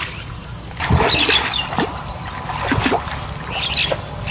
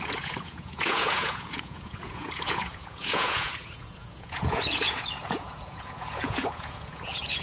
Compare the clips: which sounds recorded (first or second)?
first